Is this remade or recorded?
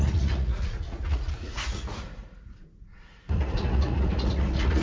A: remade